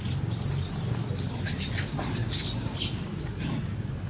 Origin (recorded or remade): recorded